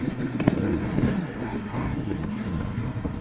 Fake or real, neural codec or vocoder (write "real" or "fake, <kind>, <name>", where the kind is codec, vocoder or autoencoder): fake, codec, SNAC